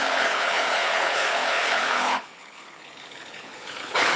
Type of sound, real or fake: fake